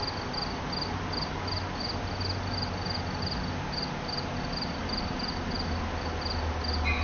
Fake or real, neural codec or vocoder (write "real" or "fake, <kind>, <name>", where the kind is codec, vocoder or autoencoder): real